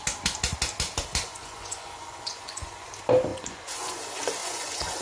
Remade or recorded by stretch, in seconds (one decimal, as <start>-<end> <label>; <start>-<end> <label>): 0.0-1.3 recorded; 1.3-2.9 remade; 2.9-3.3 recorded; 3.3-4.0 remade; 4.0-4.4 recorded; 4.4-5.0 remade